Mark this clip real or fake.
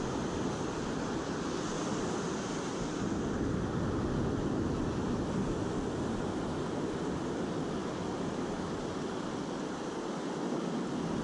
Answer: real